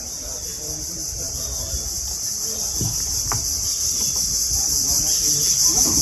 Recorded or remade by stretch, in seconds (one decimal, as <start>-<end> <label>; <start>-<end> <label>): 0.0-6.0 recorded